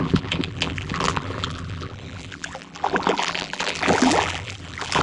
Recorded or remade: remade